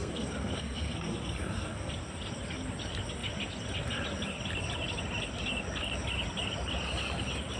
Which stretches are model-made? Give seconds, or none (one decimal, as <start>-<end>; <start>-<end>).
0.0-1.9